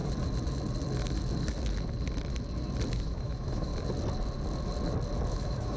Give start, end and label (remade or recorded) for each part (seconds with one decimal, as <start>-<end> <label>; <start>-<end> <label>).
0.0-2.9 recorded; 2.9-3.7 remade; 3.7-5.3 recorded; 5.3-5.8 remade